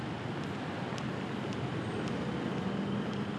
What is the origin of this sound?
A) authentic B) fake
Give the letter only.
A